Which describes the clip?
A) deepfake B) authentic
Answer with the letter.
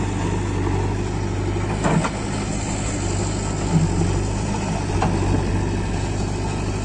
B